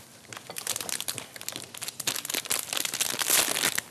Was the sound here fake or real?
real